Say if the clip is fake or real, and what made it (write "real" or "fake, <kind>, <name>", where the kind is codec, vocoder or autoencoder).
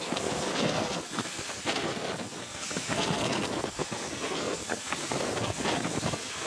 fake, codec, SNAC